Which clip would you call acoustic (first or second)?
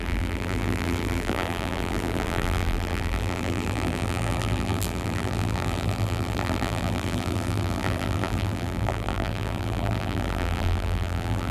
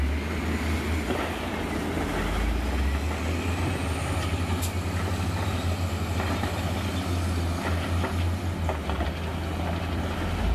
second